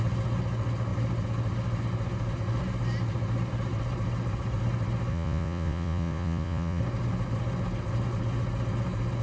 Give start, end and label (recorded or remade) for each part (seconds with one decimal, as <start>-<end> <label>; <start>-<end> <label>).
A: 0.0-5.1 recorded; 5.1-6.8 remade; 6.8-9.2 recorded